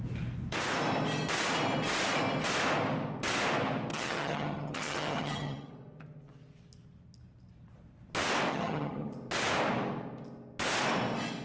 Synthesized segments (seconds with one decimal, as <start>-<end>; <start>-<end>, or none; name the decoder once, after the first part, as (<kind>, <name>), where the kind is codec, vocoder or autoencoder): 3.9-5.7 (vocoder, HiFi-GAN); 8.5-9.1